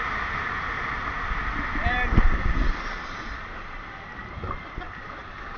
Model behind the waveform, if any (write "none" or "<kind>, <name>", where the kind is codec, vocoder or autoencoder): none